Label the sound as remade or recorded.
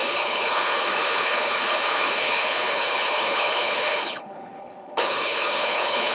remade